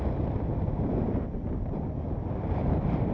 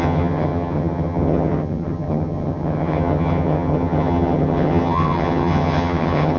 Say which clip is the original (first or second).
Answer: first